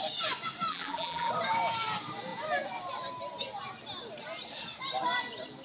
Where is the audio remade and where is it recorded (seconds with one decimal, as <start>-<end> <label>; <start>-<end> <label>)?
0.0-0.7 recorded; 0.7-1.3 remade; 1.3-5.6 recorded